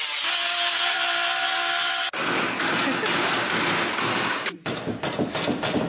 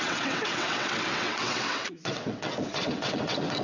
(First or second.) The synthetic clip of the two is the second